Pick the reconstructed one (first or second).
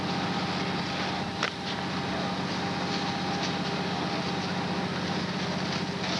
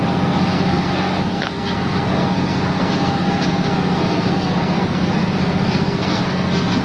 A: second